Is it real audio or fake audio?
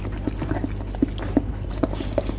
real